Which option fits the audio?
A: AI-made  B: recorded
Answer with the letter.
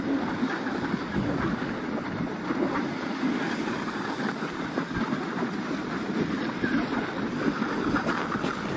B